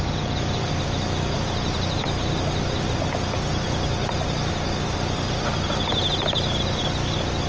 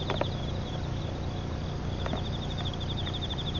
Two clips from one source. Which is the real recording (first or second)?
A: first